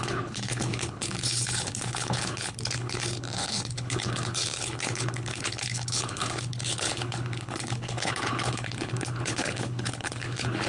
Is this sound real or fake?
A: fake